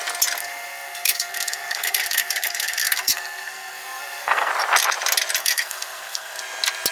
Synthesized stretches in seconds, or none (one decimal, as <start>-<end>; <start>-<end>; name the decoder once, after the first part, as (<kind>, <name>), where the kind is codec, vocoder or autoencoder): 0.4-4.5 (codec, SNAC); 5.4-6.4